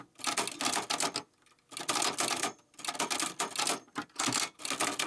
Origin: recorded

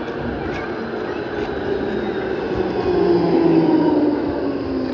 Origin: recorded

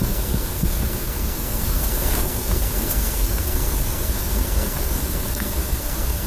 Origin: remade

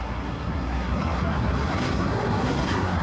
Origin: remade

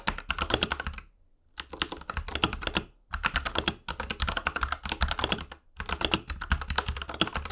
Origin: recorded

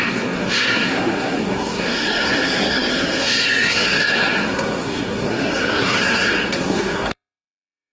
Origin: remade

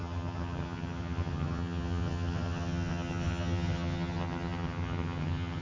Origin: remade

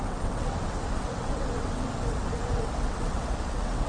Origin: remade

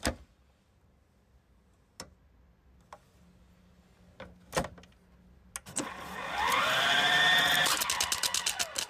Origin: recorded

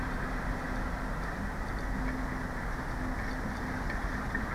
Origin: recorded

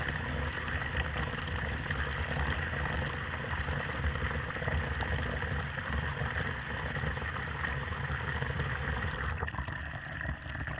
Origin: recorded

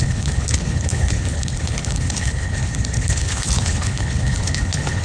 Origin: remade